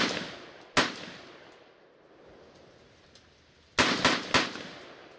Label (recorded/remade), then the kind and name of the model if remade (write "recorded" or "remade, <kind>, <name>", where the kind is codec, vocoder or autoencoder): recorded